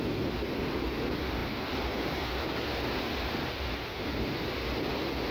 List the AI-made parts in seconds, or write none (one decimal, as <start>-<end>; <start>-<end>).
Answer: none